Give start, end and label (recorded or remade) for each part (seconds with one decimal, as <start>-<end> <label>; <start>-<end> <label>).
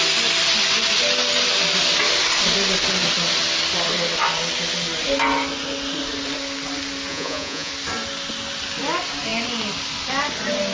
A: 0.0-7.1 recorded; 7.1-7.7 remade; 7.7-10.7 recorded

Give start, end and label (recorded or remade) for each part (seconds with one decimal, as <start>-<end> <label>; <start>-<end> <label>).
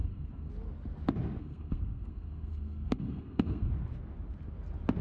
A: 0.0-0.5 remade; 0.5-1.4 recorded; 1.4-3.7 remade; 3.7-5.0 recorded